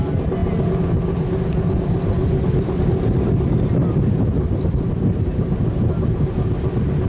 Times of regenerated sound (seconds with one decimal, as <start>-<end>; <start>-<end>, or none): none